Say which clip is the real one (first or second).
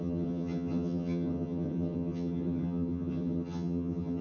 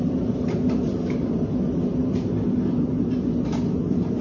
second